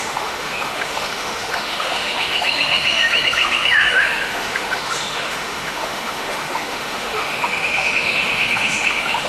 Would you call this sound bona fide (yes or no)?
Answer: no